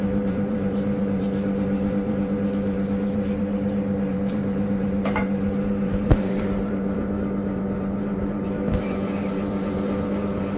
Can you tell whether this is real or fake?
fake